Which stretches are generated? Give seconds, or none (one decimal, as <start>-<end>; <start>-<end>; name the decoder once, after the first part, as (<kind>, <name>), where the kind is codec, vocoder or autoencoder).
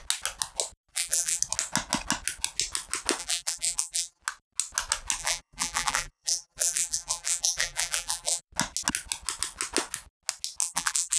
0.9-1.4 (vocoder, BigVGAN v2); 3.2-4.2; 5.2-8.4; 10.6-11.2